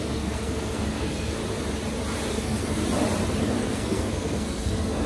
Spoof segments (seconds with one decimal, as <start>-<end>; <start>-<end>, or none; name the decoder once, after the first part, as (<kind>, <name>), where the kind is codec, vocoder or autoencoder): 0.0-1.4 (codec, SNAC); 2.3-2.8; 3.4-5.1